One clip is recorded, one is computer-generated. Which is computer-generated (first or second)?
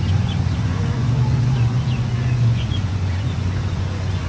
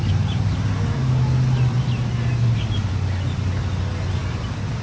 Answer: first